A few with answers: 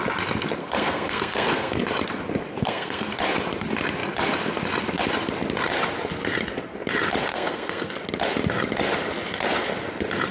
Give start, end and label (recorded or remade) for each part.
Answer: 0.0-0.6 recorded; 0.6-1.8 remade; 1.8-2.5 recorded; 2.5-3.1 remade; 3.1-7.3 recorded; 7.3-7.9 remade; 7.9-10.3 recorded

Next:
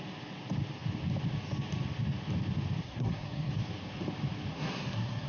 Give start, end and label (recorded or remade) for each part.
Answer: 0.0-2.8 recorded; 2.8-3.5 remade; 3.5-4.5 recorded; 4.5-5.3 remade

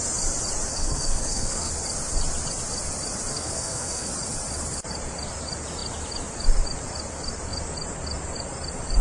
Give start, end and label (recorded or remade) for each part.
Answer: 0.0-0.7 recorded; 0.7-1.7 remade; 1.7-3.3 recorded; 3.3-4.1 remade; 4.1-9.0 recorded